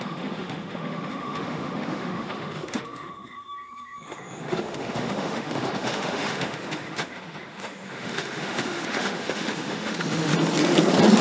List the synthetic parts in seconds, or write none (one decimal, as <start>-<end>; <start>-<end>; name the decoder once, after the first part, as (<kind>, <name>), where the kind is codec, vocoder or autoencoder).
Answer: 0.0-10.3 (autoencoder, DAC-VAE)